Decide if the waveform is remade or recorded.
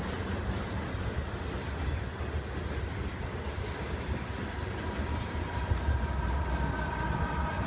recorded